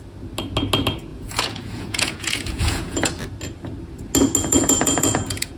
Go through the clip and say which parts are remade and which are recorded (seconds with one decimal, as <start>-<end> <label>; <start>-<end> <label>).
0.0-1.1 recorded; 1.1-3.1 remade; 3.1-4.4 recorded; 4.4-5.6 remade